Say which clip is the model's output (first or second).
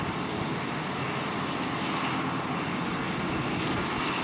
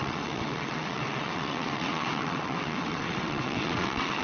second